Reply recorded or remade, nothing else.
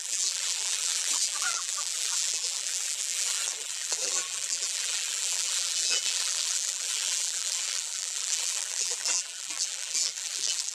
remade